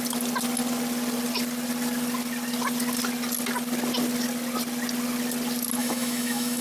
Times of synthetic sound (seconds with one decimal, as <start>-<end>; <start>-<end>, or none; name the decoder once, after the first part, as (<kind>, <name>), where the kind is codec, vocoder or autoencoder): 5.8-6.6 (autoencoder, DAC-VAE)